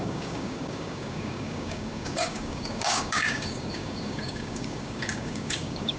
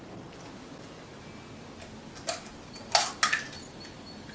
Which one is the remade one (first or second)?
first